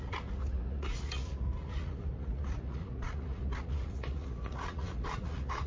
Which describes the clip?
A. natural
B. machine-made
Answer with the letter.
B